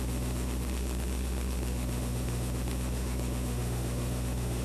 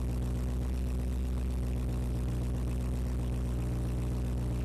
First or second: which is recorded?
second